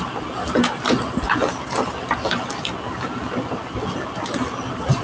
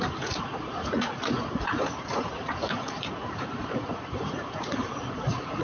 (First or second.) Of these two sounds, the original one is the first